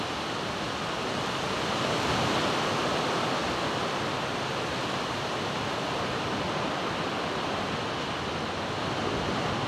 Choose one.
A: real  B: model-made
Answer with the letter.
A